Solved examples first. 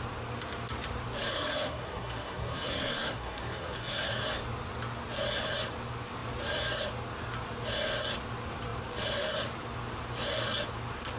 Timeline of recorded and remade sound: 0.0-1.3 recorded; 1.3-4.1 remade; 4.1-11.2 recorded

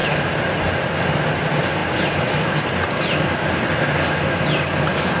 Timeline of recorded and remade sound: 0.0-5.2 recorded